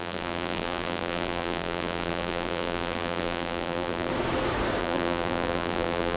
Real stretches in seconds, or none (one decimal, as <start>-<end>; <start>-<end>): 4.1-4.8